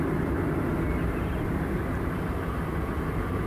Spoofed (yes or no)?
no